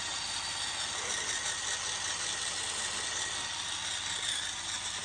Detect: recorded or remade recorded